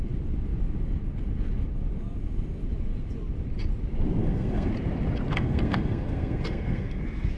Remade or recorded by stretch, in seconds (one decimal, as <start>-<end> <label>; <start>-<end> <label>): 0.0-4.2 recorded; 4.2-4.7 remade; 4.7-5.3 recorded; 5.3-7.0 remade; 7.0-7.4 recorded